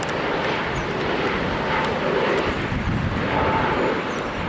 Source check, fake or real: real